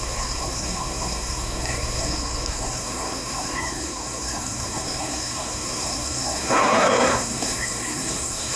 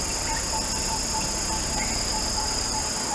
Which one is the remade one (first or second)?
first